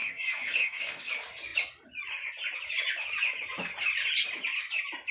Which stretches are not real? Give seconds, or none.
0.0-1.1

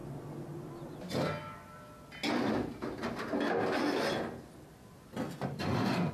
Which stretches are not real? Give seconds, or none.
none

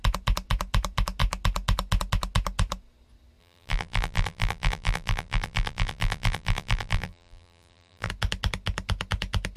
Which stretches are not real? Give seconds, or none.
3.4-8.1

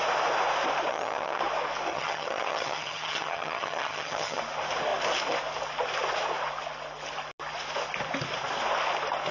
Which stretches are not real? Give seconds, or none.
0.9-1.4; 1.9-4.4

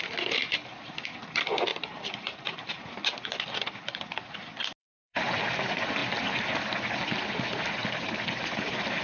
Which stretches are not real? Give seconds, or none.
1.7-2.8; 4.8-5.4

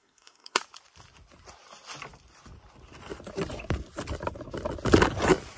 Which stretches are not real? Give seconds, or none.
0.0-0.6

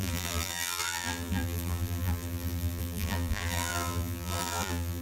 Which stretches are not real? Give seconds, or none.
0.0-5.0

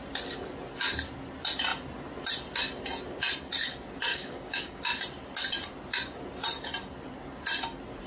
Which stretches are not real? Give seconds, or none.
4.1-4.8